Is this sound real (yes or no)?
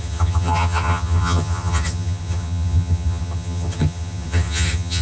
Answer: no